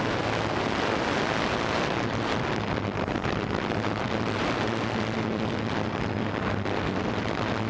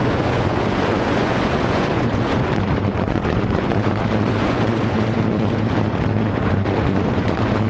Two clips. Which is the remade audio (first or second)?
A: second